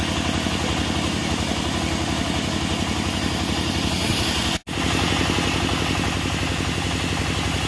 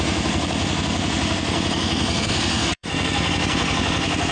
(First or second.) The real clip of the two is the first